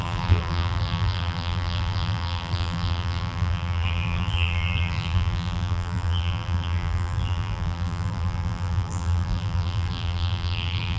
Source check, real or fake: fake